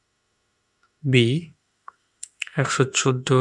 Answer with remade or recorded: remade